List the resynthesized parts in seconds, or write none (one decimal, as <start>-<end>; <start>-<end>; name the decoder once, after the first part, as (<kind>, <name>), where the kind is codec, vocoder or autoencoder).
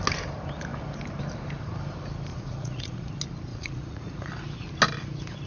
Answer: 2.3-3.1 (vocoder, Vocos); 3.5-4.3